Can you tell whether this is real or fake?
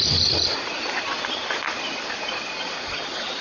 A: real